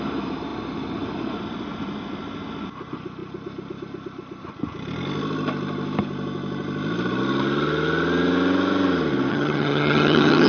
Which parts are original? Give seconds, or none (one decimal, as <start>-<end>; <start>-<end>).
0.0-9.3